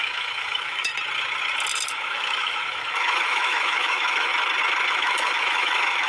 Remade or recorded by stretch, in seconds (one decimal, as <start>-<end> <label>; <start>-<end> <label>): 0.0-0.9 remade; 0.9-1.9 recorded; 1.9-4.3 remade; 4.3-4.9 recorded; 4.9-6.1 remade